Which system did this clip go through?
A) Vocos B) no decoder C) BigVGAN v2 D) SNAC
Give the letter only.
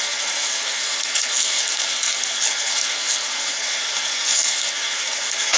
D